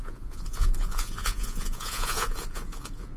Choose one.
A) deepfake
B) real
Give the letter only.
A